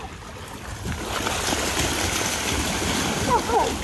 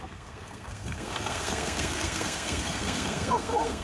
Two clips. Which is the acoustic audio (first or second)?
first